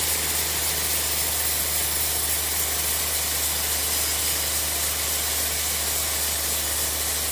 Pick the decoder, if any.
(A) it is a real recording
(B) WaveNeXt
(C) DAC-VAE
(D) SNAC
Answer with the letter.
A